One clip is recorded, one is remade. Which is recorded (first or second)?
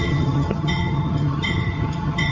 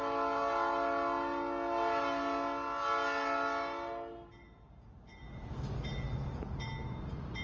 second